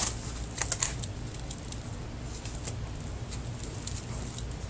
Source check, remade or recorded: recorded